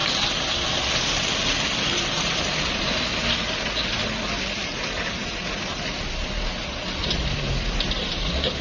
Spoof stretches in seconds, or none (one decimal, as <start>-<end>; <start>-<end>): none